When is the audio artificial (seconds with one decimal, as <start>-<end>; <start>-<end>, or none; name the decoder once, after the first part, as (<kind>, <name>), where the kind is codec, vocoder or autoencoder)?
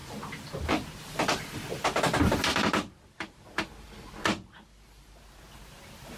none